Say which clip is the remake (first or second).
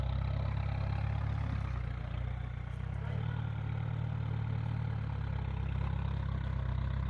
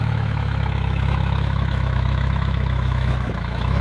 second